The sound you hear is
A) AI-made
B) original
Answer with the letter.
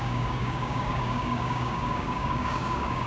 A